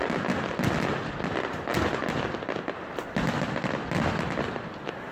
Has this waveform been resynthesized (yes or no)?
no